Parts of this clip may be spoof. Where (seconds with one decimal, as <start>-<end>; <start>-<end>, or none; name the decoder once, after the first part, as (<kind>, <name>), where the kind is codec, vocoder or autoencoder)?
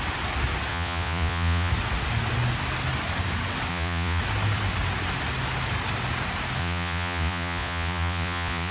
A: 0.7-1.7 (vocoder, Vocos); 3.7-4.2; 6.6-8.7